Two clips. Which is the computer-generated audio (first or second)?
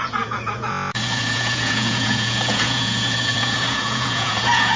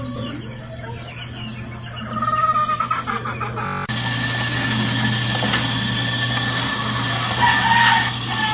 first